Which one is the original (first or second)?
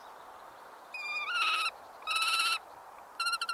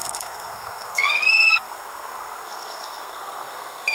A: first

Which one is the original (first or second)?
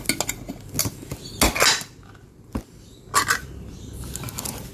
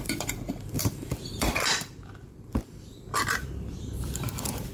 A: first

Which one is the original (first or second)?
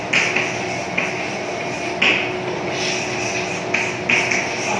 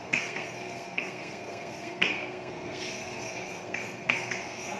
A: first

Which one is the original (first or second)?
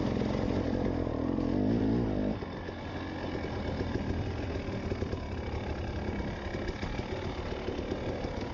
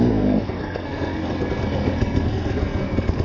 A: first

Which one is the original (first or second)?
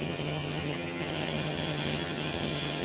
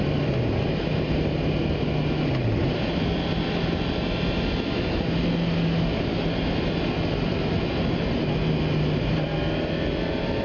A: second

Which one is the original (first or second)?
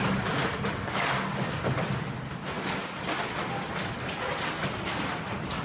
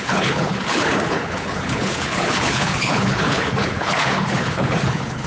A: first